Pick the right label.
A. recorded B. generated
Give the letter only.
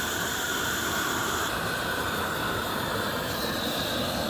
B